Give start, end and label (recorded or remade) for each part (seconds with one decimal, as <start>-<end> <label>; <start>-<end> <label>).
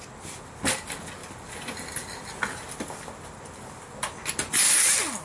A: 0.0-5.2 recorded